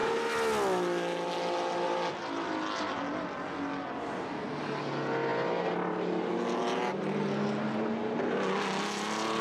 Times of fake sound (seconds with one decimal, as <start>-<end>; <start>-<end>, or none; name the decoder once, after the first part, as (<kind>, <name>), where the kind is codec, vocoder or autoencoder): none